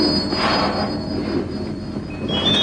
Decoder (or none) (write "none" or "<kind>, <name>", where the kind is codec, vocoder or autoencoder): vocoder, BigVGAN v2